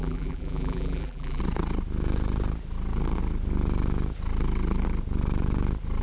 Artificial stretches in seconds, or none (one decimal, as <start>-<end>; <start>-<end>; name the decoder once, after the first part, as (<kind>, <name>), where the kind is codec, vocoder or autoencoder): 0.0-1.4 (vocoder, BigVGAN v2)